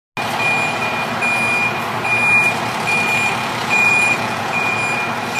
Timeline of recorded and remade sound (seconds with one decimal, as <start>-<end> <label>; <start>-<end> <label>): 0.0-3.6 recorded; 3.6-4.8 remade; 4.8-5.4 recorded